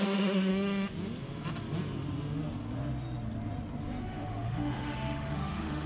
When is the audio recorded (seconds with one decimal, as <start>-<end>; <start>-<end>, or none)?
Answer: 0.5-4.0